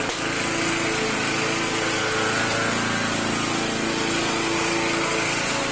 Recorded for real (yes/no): yes